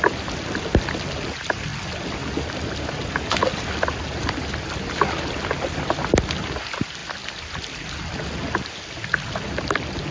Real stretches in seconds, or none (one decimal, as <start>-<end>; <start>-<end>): 0.0-10.1